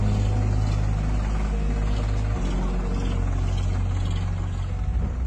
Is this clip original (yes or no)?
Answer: yes